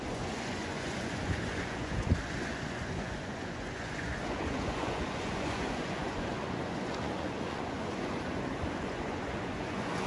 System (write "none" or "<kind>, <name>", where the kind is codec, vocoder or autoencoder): vocoder, Vocos